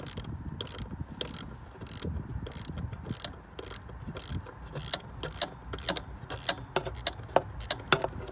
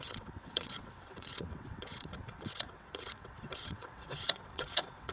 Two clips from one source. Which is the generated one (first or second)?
second